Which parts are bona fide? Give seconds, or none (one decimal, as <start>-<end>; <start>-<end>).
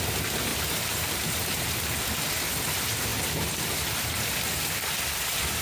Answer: 0.0-0.5; 1.6-3.1; 3.7-5.6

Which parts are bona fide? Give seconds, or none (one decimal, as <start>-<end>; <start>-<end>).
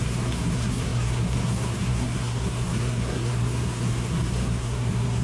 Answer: none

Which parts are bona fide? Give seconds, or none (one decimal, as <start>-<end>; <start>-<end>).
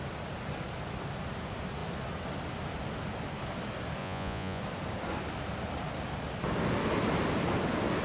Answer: 0.0-4.0; 4.6-8.0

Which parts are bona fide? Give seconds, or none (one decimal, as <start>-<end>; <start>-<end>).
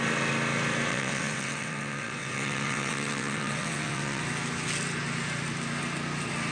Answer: 0.0-0.9; 4.2-6.5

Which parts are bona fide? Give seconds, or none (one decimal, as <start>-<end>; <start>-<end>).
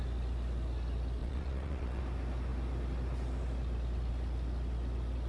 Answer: 0.0-1.2; 2.0-5.3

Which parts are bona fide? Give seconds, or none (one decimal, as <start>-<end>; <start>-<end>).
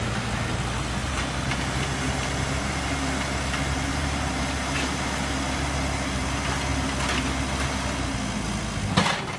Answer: 0.0-1.0; 3.0-3.9; 5.2-9.4